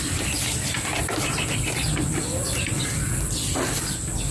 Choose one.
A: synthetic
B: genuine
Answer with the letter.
B